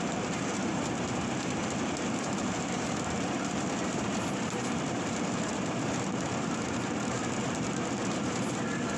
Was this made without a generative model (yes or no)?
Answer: no